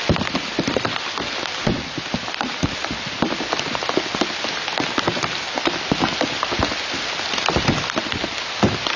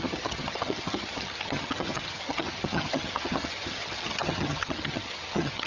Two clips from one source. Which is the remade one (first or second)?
second